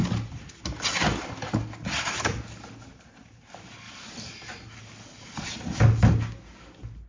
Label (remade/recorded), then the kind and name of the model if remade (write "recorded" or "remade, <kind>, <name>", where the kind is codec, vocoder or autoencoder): recorded